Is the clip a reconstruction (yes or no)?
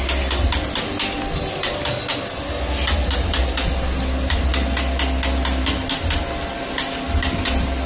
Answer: no